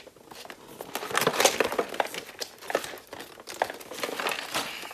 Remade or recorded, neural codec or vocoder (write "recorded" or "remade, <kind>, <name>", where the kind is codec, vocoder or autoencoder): recorded